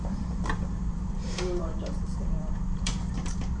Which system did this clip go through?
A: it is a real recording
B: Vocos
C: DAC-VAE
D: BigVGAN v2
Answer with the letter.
D